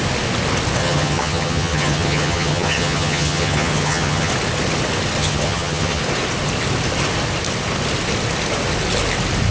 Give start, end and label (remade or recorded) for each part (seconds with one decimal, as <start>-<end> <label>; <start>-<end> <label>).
0.0-0.8 recorded; 0.8-4.3 remade; 4.3-5.2 recorded; 5.2-6.0 remade; 6.0-9.5 recorded